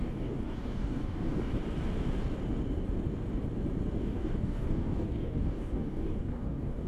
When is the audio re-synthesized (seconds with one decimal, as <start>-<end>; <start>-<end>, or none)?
0.0-1.5; 4.0-6.9